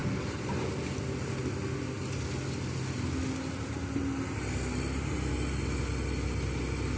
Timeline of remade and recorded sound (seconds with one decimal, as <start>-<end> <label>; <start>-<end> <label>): 0.0-7.0 recorded